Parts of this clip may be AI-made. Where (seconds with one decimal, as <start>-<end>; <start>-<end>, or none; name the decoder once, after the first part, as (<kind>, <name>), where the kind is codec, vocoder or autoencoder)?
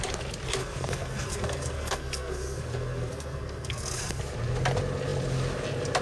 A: 0.6-4.2 (codec, SNAC)